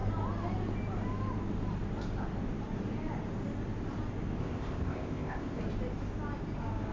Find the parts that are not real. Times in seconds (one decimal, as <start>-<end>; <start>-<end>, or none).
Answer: 4.4-5.6